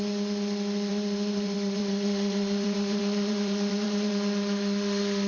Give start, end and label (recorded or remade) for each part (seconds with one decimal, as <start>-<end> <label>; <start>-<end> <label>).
0.0-0.9 recorded; 0.9-4.1 remade; 4.1-5.3 recorded